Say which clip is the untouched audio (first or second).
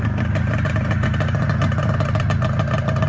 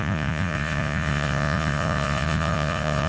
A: first